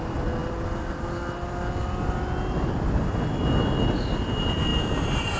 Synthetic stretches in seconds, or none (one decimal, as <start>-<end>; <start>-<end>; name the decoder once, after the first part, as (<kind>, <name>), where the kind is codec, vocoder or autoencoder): none